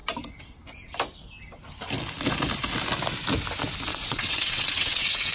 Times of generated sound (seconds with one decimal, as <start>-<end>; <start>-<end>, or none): 3.9-5.3